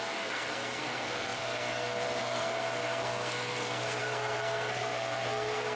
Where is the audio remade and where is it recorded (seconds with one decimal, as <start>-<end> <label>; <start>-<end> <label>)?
0.0-5.8 remade